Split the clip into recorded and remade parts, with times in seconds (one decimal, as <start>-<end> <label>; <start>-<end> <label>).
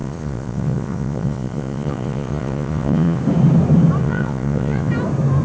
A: 0.0-3.2 remade; 3.2-4.0 recorded; 4.0-4.9 remade; 4.9-5.4 recorded